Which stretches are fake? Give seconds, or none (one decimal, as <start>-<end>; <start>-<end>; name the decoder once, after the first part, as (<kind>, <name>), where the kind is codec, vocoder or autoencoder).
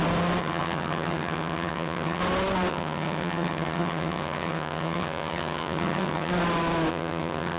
0.4-2.2 (vocoder, HiFi-GAN); 2.7-6.3; 6.9-7.6